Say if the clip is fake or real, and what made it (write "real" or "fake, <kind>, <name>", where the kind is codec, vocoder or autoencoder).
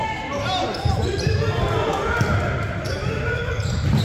real